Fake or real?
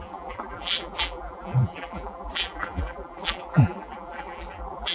fake